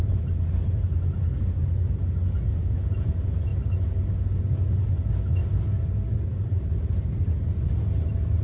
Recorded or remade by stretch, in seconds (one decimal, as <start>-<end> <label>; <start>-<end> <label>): 0.0-2.5 recorded; 2.5-3.1 remade; 3.1-8.4 recorded